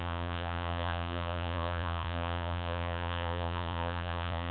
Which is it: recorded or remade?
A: remade